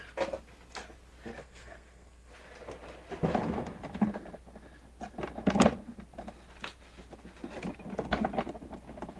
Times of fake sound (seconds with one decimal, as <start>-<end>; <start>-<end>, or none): 1.4-2.3